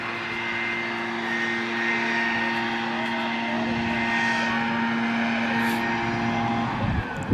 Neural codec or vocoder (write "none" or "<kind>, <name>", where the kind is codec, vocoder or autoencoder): none